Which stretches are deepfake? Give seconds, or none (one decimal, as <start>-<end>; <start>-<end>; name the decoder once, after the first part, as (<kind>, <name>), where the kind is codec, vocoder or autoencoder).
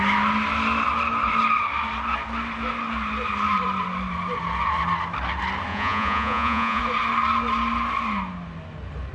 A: 5.7-6.8 (vocoder, Vocos)